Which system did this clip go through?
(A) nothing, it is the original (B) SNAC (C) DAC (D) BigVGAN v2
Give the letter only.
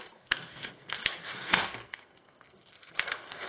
B